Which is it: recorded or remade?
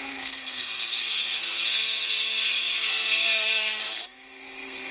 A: remade